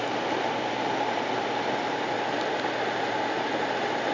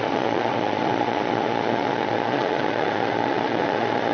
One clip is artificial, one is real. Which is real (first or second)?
first